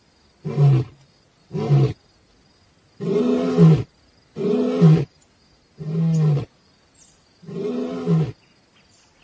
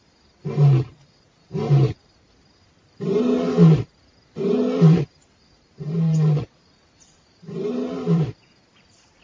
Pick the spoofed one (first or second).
second